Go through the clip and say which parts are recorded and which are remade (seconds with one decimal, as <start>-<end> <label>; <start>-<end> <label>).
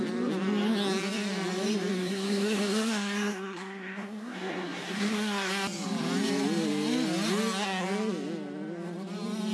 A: 0.0-2.0 recorded; 2.0-5.5 remade; 5.5-9.5 recorded